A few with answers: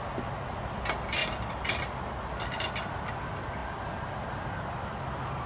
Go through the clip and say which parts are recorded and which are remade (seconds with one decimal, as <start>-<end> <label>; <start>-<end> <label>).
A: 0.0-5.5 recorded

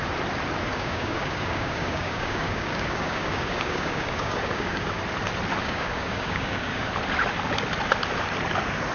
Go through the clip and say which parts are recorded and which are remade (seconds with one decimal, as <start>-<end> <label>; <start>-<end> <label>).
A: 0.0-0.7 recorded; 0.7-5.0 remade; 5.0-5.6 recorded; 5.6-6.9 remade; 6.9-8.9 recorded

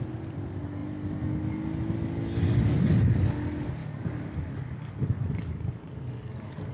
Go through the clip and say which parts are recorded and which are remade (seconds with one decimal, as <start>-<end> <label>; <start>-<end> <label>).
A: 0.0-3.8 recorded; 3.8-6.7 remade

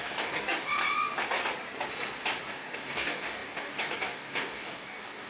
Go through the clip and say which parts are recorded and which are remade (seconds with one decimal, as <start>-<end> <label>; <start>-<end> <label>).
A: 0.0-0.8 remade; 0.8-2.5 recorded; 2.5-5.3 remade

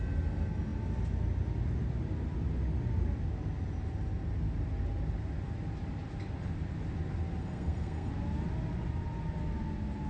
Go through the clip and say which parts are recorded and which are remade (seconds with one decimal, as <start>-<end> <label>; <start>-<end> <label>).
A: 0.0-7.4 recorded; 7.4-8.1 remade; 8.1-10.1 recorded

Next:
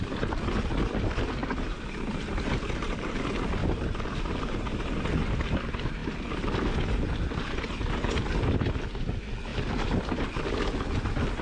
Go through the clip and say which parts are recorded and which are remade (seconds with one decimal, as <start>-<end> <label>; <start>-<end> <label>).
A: 0.0-1.4 recorded; 1.4-3.1 remade; 3.1-3.6 recorded; 3.6-5.2 remade; 5.2-11.4 recorded